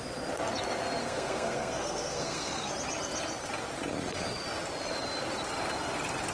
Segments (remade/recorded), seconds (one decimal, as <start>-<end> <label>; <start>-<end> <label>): 0.0-1.0 recorded; 1.0-2.7 remade; 2.7-6.3 recorded